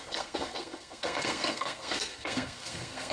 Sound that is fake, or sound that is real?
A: fake